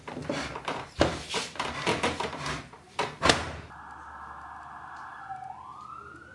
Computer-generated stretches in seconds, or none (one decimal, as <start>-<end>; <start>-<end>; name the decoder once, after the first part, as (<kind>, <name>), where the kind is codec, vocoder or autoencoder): 0.0-3.8 (vocoder, BigVGAN v2); 5.7-6.3